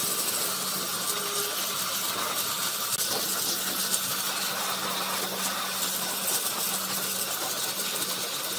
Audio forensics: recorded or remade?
recorded